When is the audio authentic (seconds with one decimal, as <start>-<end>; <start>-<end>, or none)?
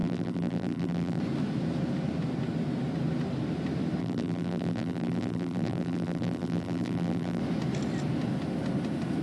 1.2-4.0; 7.4-9.2